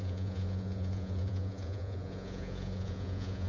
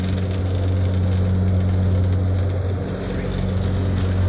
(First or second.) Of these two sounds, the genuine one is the second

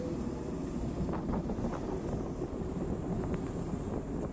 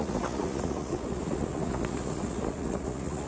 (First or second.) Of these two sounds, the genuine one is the first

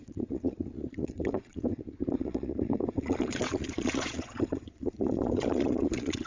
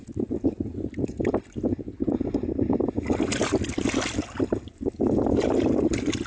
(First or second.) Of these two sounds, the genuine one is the second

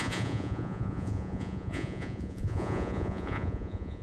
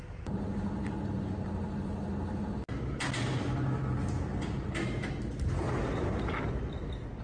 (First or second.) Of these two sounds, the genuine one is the second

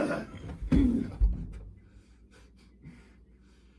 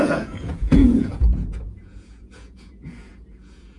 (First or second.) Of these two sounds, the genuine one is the first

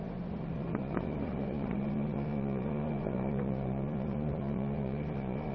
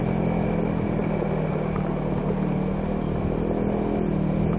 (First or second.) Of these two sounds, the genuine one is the second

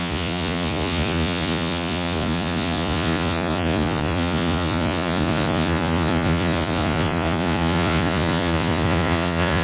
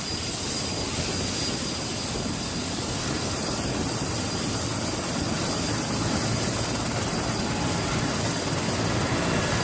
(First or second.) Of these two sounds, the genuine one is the second